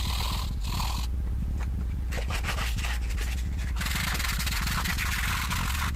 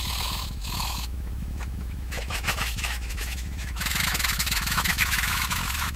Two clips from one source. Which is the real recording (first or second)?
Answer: first